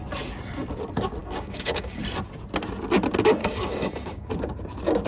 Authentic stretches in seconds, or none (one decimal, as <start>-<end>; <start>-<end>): 0.0-1.2; 2.0-3.4; 4.3-5.1